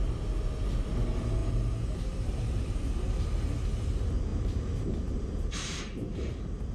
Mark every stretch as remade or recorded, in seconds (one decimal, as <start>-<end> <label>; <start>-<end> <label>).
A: 0.0-4.3 recorded; 4.3-5.8 remade; 5.8-6.7 recorded